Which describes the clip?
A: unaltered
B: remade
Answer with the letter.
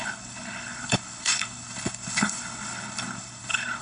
B